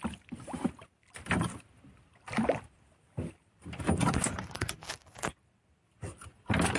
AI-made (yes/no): no